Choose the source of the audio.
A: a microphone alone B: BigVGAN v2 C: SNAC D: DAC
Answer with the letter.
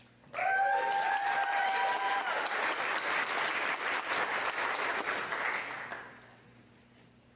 A